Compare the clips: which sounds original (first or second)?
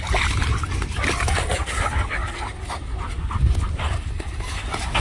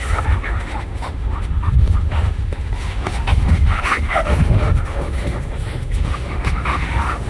first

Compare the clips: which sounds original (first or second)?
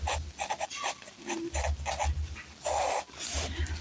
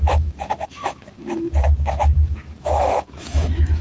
first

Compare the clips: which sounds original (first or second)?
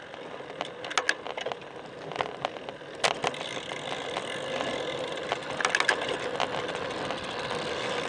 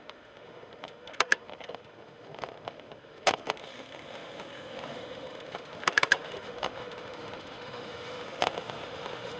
first